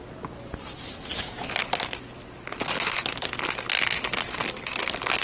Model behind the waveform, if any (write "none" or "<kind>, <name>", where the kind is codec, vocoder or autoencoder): none